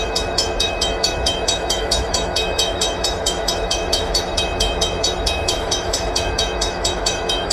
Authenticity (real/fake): fake